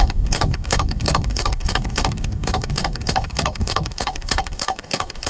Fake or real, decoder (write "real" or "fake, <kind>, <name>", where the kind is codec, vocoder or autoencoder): fake, codec, DAC